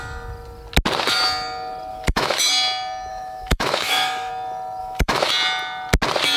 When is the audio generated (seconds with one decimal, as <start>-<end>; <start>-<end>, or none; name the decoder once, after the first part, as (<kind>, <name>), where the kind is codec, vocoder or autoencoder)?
1.9-2.5 (autoencoder, DAC-VAE); 3.1-4.3; 4.8-5.3